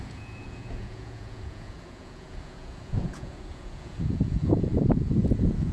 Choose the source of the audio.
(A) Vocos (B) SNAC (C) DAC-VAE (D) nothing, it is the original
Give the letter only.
A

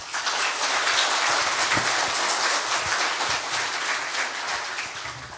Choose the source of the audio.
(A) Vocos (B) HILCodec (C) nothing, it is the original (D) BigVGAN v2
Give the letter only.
C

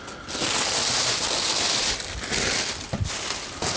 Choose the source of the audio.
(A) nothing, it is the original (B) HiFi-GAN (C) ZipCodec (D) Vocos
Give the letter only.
A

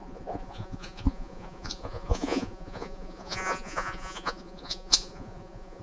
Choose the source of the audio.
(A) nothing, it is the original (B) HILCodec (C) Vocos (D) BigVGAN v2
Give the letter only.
C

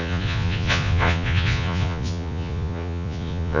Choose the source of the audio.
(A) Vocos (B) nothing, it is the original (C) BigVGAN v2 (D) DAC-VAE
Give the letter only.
A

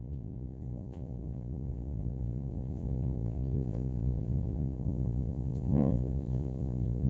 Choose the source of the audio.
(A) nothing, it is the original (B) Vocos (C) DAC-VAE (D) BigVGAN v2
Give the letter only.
B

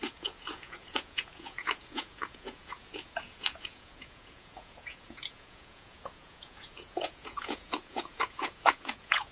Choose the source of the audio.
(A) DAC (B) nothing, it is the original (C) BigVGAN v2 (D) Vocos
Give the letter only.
D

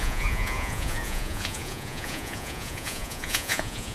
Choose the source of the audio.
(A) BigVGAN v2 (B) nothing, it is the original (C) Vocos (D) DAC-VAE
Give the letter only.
C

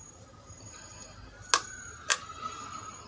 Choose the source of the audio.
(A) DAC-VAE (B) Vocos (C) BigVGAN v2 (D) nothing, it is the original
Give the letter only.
D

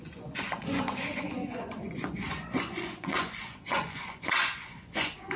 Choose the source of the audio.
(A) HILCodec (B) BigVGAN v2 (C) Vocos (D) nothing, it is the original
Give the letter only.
C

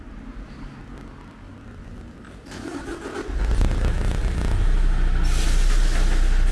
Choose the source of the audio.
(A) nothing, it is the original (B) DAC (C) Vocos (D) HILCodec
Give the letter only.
A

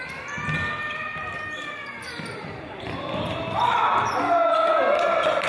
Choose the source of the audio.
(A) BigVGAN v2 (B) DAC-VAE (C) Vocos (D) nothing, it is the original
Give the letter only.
D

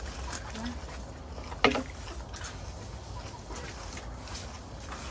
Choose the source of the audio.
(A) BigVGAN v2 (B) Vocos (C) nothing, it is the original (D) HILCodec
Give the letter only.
C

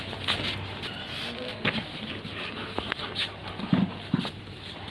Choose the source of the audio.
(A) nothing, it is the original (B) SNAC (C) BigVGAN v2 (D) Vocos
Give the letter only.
A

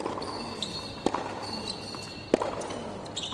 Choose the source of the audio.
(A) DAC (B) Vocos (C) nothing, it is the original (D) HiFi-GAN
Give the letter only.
C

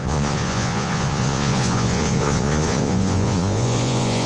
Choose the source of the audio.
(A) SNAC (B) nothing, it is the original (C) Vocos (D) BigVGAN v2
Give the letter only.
C